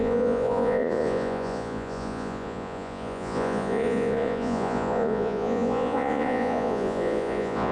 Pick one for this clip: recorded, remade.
remade